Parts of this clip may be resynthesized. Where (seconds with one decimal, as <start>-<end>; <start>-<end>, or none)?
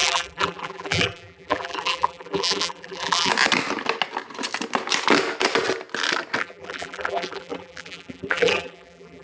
0.0-3.3; 6.4-9.2